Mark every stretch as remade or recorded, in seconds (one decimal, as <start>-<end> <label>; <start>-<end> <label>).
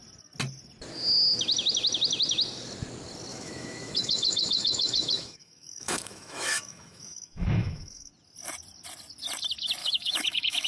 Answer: 0.0-3.3 recorded; 3.3-8.1 remade; 8.1-9.8 recorded; 9.8-10.7 remade